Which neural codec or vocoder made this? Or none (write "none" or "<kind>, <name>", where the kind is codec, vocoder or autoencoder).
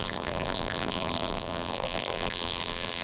vocoder, BigVGAN v2